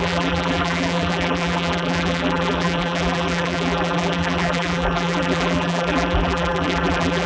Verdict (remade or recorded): remade